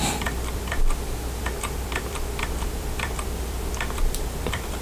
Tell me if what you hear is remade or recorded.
remade